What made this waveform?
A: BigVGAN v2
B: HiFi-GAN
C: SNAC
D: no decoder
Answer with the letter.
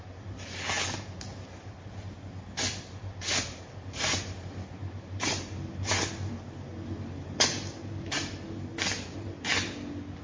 D